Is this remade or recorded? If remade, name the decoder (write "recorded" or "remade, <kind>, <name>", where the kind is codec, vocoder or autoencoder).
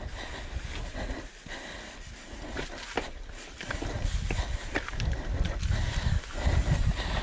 recorded